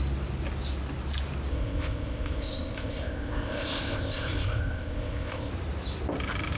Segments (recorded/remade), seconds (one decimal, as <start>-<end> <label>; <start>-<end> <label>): 0.0-1.5 recorded; 1.5-5.5 remade; 5.5-6.6 recorded